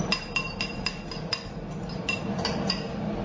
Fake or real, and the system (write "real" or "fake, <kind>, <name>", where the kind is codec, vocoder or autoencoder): real